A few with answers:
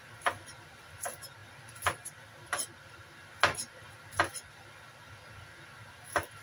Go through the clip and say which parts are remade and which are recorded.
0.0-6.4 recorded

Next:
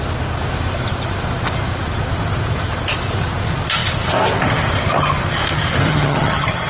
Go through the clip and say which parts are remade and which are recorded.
0.0-5.9 recorded; 5.9-6.7 remade

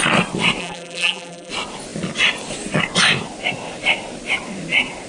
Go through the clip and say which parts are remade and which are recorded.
0.0-0.6 recorded; 0.6-1.5 remade; 1.5-5.1 recorded

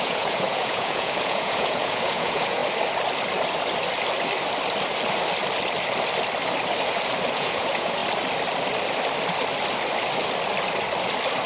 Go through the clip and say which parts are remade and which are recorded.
0.0-2.6 remade; 2.6-7.3 recorded; 7.3-8.0 remade; 8.0-11.5 recorded

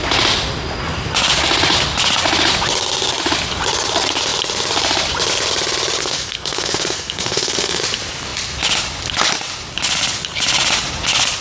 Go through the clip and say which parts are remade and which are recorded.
0.0-6.0 recorded; 6.0-7.8 remade; 7.8-11.4 recorded

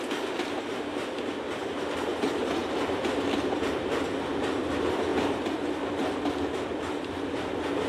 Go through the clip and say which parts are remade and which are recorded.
0.0-2.6 recorded; 2.6-4.6 remade; 4.6-5.1 recorded; 5.1-6.1 remade; 6.1-7.9 recorded

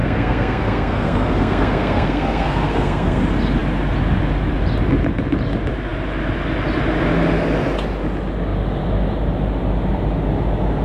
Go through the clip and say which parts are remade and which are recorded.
0.0-3.2 remade; 3.2-10.8 recorded

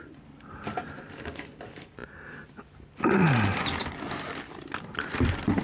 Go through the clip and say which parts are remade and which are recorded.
0.0-5.6 recorded